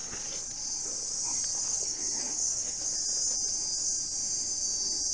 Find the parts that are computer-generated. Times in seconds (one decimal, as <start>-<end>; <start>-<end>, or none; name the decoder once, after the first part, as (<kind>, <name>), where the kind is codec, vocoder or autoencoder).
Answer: 1.7-2.9 (codec, DAC)